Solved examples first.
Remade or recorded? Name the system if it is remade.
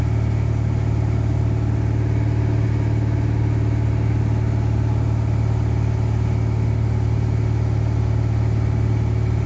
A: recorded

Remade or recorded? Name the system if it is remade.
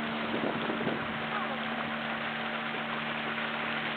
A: recorded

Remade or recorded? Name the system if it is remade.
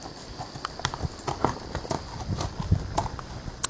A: recorded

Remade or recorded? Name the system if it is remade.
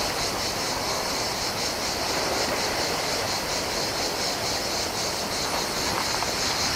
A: recorded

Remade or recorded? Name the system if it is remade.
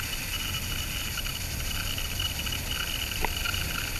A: recorded